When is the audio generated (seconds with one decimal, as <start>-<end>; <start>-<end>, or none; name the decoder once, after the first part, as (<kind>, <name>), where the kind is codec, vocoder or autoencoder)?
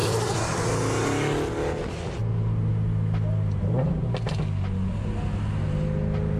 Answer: 0.0-0.6 (vocoder, BigVGAN v2)